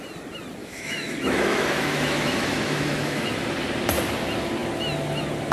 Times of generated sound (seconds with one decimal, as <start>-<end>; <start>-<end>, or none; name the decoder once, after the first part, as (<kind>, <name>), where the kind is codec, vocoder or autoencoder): 0.6-3.3 (autoencoder, DAC-VAE)